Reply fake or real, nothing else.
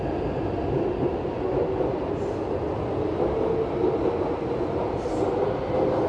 real